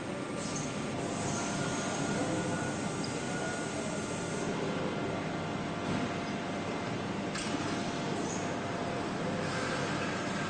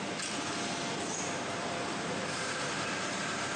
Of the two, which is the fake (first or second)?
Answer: second